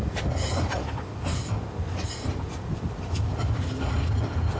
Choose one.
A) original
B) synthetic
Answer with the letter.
B